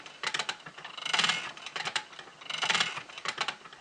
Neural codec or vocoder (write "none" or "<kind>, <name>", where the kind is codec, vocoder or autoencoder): none